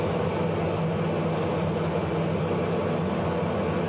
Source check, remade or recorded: recorded